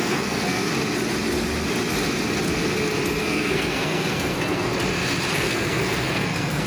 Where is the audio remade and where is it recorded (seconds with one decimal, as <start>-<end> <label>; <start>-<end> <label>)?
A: 0.0-0.7 remade; 0.7-3.2 recorded; 3.2-4.7 remade; 4.7-5.3 recorded; 5.3-6.7 remade